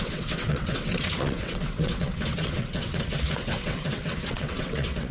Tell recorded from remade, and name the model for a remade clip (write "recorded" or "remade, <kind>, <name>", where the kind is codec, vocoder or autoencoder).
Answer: remade, vocoder, WaveNeXt